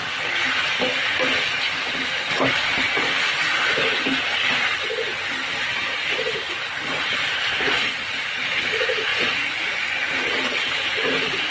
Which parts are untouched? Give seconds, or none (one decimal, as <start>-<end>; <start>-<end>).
0.0-9.1; 10.1-11.5